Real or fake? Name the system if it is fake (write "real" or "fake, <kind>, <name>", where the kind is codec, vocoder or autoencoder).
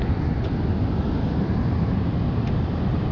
real